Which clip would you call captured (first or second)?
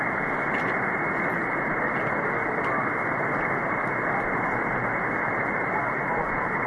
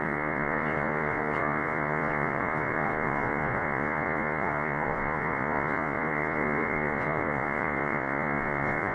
first